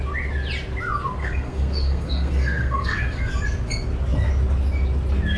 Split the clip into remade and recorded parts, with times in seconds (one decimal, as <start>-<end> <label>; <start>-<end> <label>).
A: 0.0-1.2 recorded; 1.2-3.3 remade; 3.3-5.4 recorded